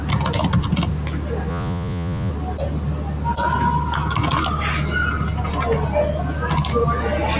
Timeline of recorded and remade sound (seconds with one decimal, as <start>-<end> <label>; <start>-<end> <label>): 0.0-1.5 recorded; 1.5-2.3 remade; 2.3-7.4 recorded